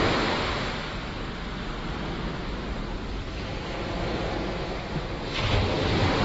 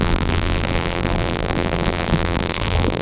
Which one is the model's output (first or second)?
second